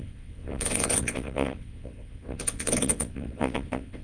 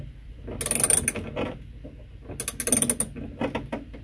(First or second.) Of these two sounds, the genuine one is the second